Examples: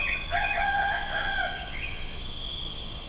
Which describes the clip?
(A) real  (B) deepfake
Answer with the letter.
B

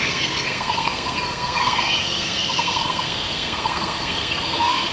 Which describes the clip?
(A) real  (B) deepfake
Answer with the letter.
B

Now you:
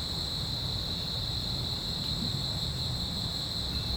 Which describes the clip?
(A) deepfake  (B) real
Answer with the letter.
B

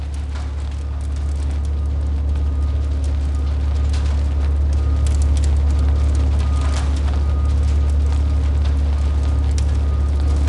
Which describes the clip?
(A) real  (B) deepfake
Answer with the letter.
A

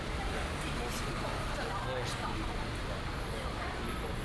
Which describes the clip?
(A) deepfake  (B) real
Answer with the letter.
B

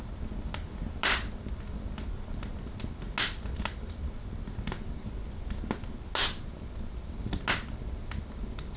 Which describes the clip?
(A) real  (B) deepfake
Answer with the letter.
A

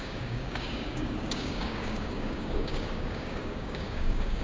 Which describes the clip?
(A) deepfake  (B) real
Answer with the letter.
A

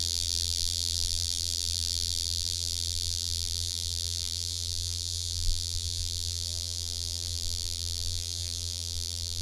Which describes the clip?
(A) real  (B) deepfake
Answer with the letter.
B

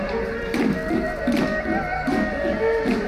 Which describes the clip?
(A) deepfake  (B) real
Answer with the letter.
B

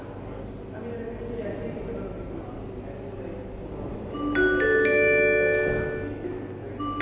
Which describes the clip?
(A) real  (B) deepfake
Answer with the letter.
A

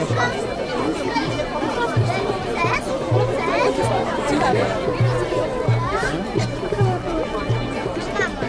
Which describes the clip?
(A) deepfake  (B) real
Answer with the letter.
A